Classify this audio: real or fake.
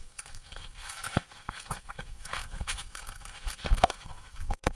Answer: fake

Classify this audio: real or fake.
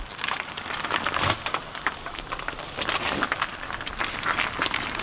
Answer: real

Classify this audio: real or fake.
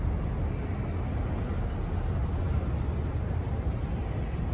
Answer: real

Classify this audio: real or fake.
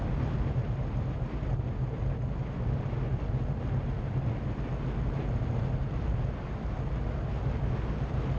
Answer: real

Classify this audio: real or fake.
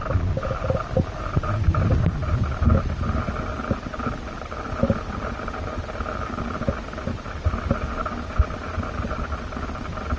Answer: real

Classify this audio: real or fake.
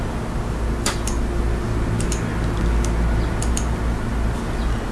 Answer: real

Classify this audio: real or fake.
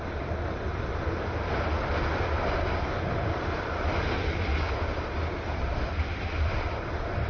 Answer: real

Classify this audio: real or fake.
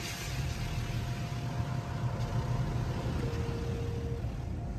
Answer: real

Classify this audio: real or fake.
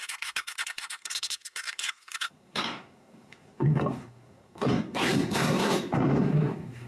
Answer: fake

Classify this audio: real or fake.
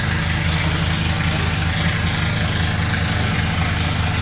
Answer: real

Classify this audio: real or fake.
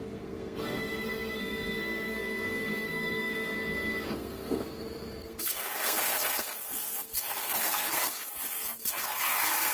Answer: fake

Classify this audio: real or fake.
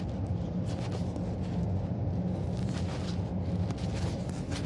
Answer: real